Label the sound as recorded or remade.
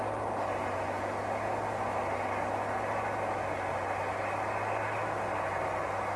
recorded